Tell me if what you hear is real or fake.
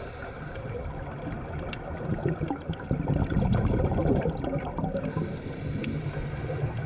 real